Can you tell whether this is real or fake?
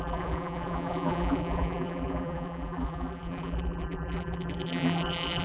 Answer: fake